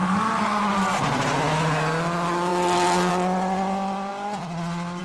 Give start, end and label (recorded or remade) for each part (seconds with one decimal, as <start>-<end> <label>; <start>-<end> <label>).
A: 0.0-0.6 remade; 0.6-5.0 recorded